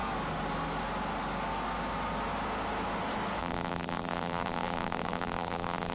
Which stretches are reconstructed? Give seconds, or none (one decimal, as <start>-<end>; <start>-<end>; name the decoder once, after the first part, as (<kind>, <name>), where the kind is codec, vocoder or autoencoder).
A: 3.4-5.9 (vocoder, BigVGAN v2)